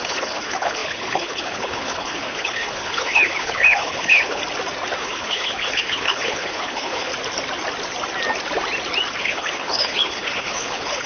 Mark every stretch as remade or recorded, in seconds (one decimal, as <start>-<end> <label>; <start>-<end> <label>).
0.0-4.4 remade; 4.4-5.0 recorded; 5.0-7.1 remade; 7.1-9.2 recorded; 9.2-11.1 remade